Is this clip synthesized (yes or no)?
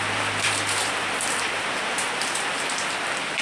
yes